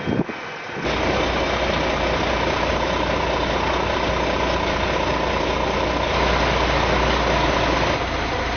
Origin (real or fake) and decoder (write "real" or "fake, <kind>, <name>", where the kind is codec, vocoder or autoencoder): real